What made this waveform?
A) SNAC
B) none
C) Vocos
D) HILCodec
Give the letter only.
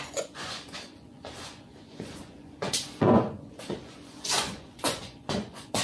C